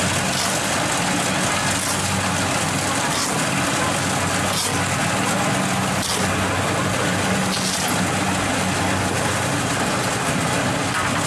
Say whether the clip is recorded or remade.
recorded